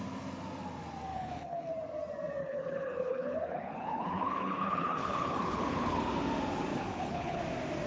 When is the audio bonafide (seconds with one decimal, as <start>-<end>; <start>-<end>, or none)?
0.0-1.1; 1.7-2.4; 6.0-6.7; 7.4-7.9